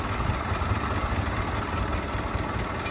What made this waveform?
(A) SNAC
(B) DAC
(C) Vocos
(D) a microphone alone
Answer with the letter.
D